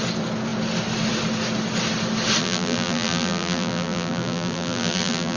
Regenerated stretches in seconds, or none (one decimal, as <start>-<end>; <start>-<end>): 2.4-5.4